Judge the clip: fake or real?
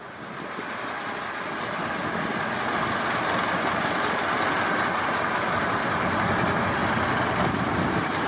real